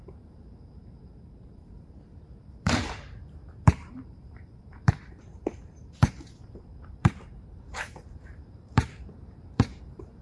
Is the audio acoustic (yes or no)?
no